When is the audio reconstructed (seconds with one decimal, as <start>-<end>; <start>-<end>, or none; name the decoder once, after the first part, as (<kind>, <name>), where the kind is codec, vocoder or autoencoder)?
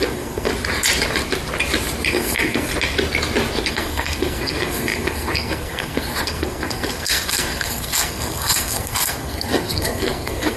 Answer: 0.0-0.5 (codec, SNAC); 2.1-2.7; 3.7-10.6